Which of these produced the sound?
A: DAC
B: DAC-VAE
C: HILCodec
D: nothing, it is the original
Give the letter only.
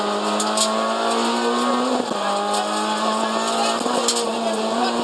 D